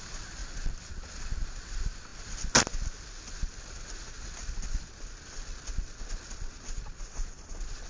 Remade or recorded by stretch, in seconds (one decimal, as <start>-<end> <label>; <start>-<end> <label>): 0.0-7.9 recorded